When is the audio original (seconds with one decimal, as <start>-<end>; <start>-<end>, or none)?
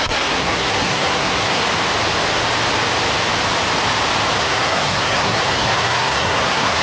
1.6-4.4